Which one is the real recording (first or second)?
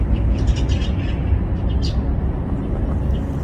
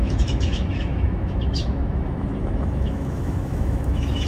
first